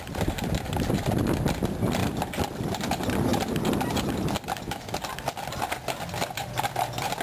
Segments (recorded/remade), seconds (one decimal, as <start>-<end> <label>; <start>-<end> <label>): 0.0-7.2 recorded